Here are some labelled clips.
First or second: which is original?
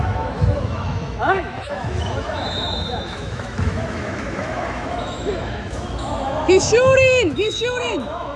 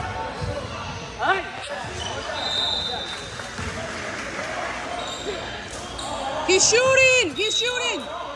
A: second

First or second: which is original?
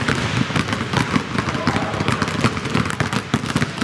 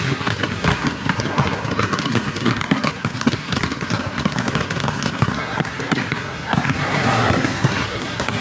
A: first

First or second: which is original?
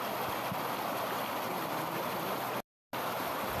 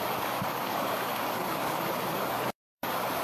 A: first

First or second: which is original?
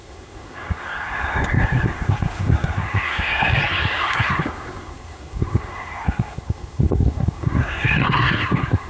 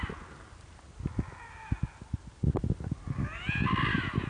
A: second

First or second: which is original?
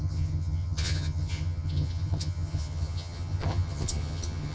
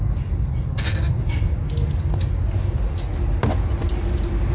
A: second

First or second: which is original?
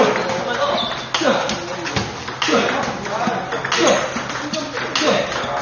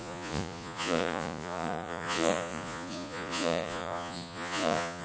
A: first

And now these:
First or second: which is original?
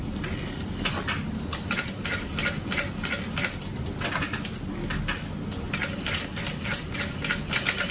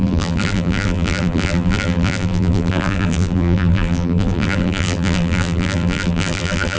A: first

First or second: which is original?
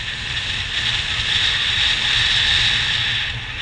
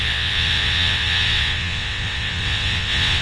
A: first